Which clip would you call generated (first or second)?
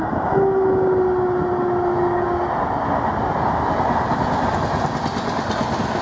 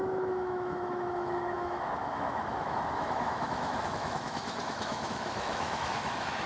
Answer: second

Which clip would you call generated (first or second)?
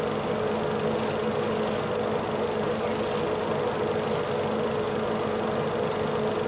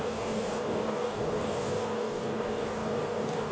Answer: second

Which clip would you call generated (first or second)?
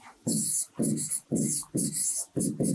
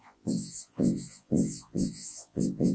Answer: second